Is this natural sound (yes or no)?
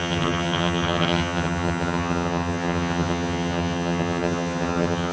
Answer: no